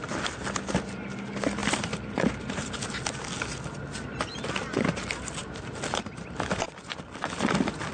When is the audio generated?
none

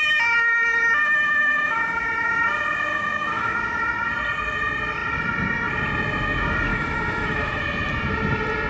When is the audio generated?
1.0-2.3; 2.9-3.6; 6.7-7.6

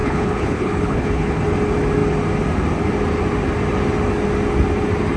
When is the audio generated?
0.0-1.4

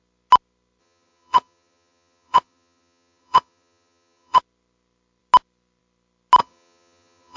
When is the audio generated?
0.8-4.4; 6.4-7.4

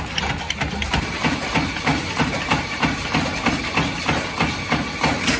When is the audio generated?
0.8-1.5; 1.9-3.5

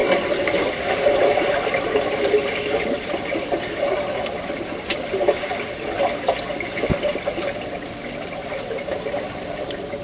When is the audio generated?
none

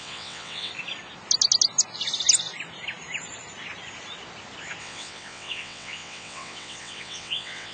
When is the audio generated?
0.0-0.7; 4.8-7.7